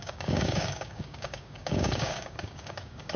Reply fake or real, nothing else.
fake